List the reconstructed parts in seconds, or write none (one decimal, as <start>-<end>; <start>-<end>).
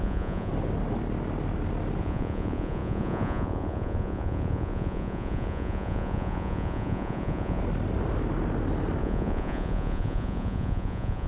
0.0-0.5; 2.0-7.6; 9.0-11.3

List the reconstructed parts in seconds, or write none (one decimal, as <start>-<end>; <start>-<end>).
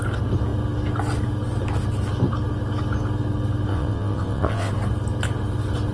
3.7-4.7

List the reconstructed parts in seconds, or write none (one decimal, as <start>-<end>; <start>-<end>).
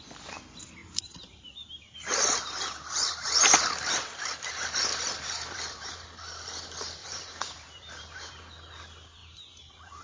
0.8-5.9; 7.0-8.3; 9.2-10.0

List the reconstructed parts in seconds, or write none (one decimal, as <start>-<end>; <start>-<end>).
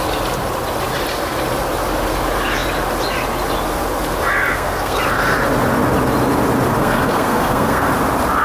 4.5-5.0; 6.8-7.9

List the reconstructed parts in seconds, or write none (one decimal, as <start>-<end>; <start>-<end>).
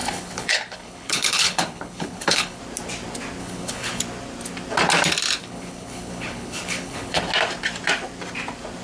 0.0-2.6; 3.4-4.0; 5.4-7.2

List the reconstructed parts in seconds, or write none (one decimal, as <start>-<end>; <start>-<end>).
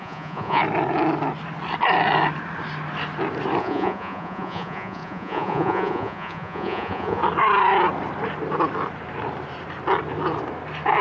0.0-0.6; 3.6-7.2